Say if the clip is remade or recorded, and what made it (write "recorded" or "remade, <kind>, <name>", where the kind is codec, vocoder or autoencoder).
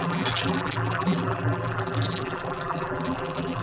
remade, vocoder, BigVGAN v2